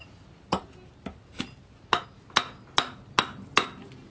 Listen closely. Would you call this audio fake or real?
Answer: real